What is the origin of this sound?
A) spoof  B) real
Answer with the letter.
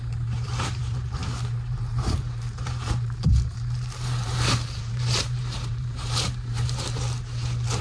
A